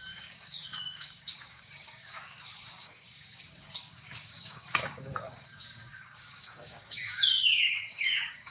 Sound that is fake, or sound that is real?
fake